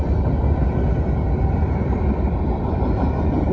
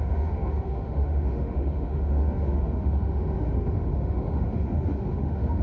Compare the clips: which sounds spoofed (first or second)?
second